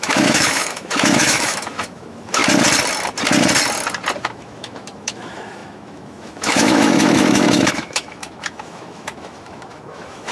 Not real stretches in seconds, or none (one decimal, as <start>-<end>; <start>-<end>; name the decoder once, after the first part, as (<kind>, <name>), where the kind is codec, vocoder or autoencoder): 0.0-2.4 (autoencoder, DAC-VAE); 4.2-10.3

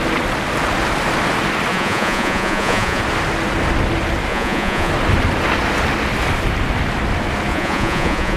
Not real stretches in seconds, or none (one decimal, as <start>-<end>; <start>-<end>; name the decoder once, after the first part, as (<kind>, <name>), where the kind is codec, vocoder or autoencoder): 1.7-3.0 (vocoder, Vocos); 4.3-4.9; 7.5-8.4

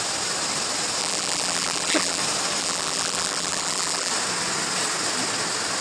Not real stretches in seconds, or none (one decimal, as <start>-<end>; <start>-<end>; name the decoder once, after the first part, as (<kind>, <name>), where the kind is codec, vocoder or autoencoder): 1.0-2.2 (vocoder, BigVGAN v2); 2.6-4.1

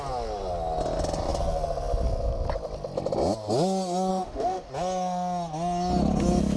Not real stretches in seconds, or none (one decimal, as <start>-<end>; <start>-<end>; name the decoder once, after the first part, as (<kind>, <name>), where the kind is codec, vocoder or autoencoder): 4.1-4.7 (autoencoder, DAC-VAE)

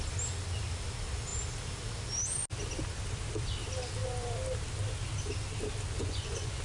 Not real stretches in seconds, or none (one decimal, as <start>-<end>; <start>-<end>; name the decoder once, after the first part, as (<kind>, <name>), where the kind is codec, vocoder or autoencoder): 6.0-6.6 (vocoder, Vocos)